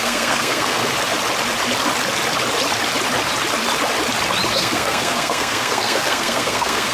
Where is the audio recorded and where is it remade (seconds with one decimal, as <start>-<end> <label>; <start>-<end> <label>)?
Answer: 0.0-0.8 remade; 0.8-4.5 recorded; 4.5-6.9 remade